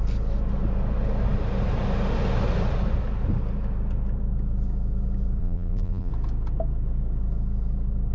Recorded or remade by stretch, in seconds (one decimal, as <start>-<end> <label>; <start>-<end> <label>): 0.0-5.4 recorded; 5.4-6.1 remade; 6.1-8.1 recorded